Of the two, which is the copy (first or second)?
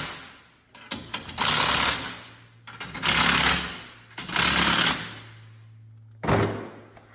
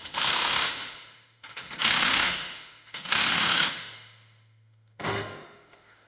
second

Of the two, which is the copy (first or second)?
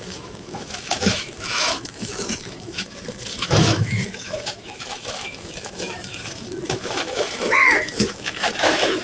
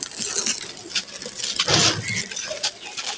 first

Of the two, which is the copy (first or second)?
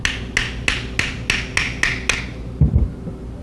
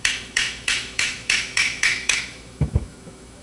second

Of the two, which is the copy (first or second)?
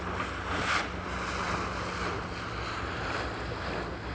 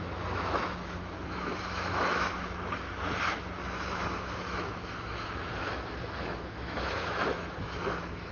second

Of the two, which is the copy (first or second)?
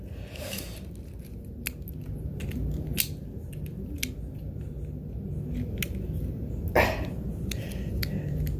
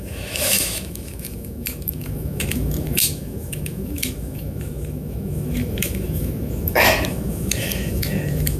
second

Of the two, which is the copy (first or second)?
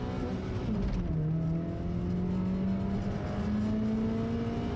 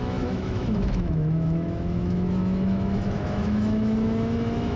second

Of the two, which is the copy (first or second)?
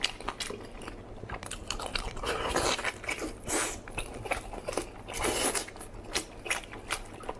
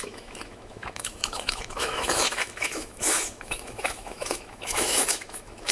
second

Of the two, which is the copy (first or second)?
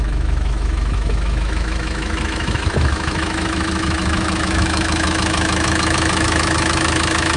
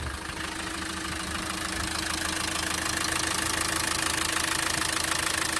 first